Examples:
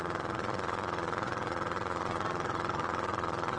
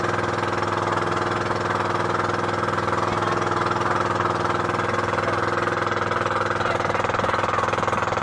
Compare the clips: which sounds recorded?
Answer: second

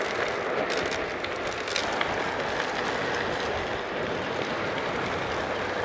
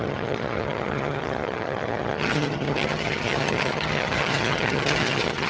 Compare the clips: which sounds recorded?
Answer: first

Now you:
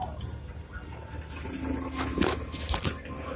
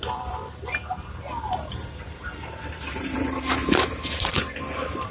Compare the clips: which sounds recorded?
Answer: first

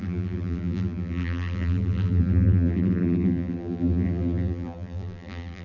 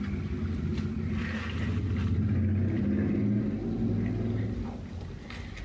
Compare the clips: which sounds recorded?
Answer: second